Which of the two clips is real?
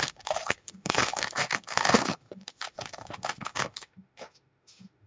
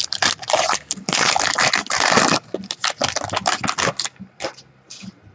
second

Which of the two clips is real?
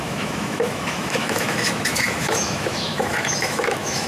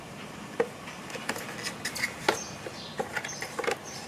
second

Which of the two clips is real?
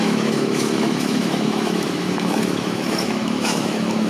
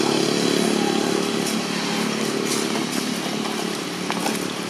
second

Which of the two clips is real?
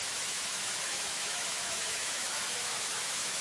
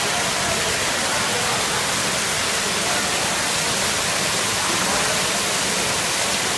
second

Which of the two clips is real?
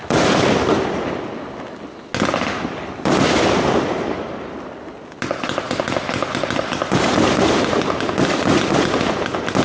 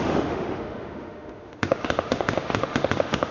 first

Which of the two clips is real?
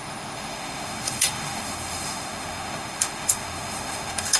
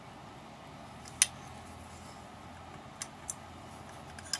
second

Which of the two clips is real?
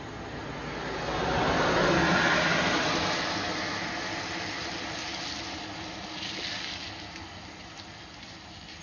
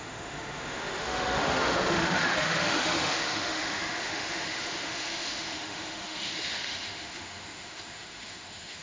first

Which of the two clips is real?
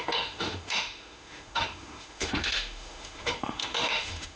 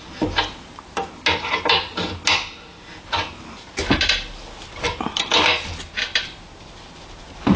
second